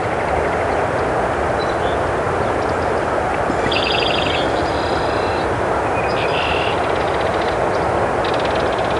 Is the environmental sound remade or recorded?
recorded